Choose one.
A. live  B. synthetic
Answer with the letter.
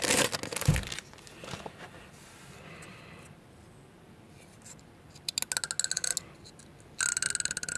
A